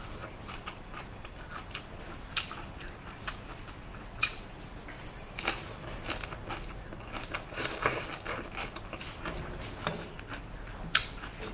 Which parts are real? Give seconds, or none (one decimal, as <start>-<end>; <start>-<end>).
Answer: 0.0-3.8; 4.5-11.5